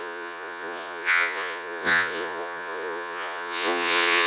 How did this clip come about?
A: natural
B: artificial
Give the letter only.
B